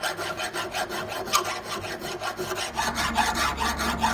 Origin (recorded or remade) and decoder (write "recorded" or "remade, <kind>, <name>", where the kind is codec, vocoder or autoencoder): recorded